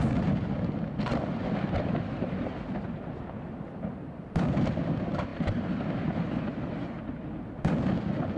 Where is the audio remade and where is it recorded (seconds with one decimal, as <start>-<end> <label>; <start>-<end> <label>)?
0.0-8.4 recorded